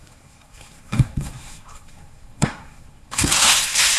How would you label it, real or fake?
fake